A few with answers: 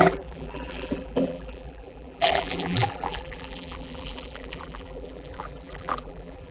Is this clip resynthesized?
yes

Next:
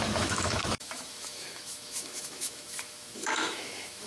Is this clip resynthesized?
yes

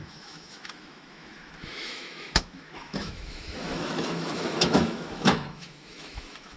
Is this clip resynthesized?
yes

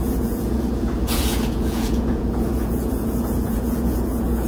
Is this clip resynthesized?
yes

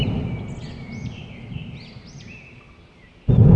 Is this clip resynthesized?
no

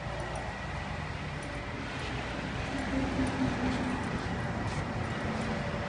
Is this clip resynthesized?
no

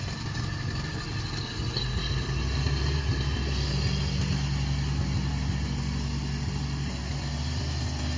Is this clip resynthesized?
no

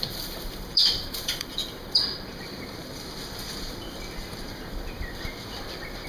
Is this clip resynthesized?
yes